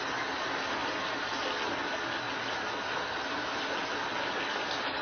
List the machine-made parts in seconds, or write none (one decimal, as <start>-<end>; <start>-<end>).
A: none